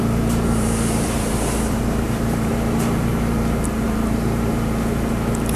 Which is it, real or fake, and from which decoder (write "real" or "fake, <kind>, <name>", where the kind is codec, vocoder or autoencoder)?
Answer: fake, vocoder, BigVGAN v2